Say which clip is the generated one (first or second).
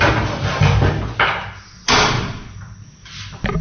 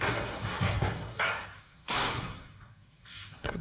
second